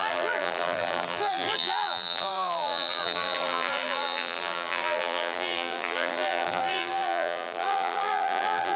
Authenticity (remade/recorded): remade